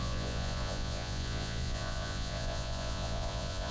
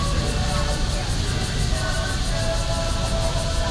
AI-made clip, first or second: first